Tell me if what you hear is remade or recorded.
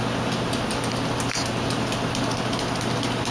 recorded